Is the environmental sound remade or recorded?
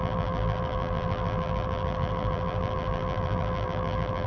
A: remade